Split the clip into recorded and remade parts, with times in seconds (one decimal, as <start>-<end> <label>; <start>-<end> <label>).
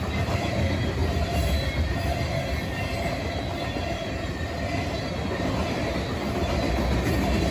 0.0-7.5 recorded